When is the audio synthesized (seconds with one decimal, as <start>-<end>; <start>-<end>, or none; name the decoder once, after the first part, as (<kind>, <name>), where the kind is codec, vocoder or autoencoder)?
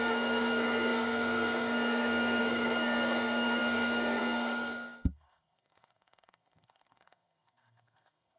0.0-8.4 (codec, SNAC)